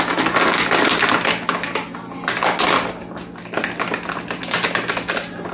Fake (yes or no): no